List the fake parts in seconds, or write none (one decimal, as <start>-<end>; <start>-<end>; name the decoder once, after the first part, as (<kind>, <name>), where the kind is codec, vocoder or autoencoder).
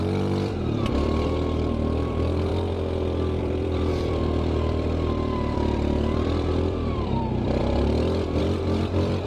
0.0-2.5 (vocoder, BigVGAN v2); 3.4-9.3